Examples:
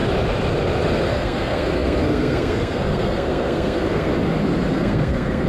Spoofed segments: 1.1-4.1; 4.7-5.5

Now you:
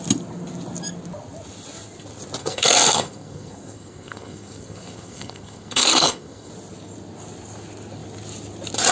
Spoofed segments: 2.4-6.5